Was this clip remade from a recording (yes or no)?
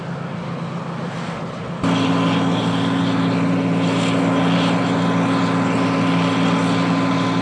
no